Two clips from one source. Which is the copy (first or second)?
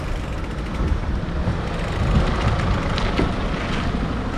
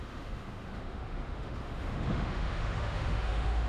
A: second